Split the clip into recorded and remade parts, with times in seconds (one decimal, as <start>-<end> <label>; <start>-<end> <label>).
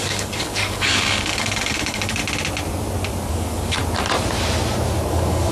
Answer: 0.0-2.2 remade; 2.2-3.3 recorded; 3.3-3.8 remade; 3.8-5.1 recorded; 5.1-5.5 remade